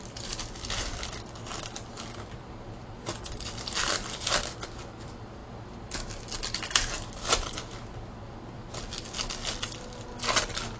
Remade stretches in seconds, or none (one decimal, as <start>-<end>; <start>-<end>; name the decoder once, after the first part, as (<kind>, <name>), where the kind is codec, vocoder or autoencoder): none